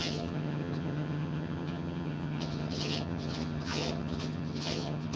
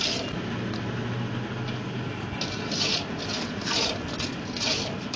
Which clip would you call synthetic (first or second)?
first